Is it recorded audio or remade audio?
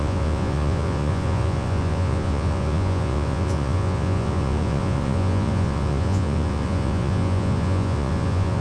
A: remade